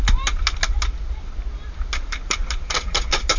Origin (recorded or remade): recorded